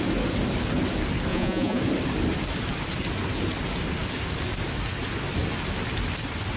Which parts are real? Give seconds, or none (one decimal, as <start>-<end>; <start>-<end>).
0.0-1.3; 1.8-6.6